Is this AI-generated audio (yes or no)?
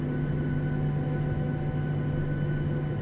no